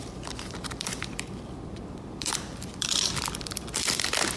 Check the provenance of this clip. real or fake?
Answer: fake